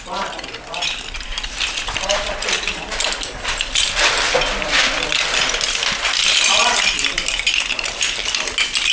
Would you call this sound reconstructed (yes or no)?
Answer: no